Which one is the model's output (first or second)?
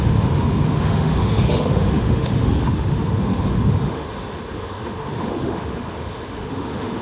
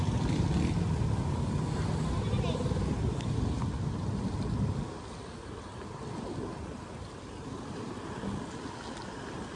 first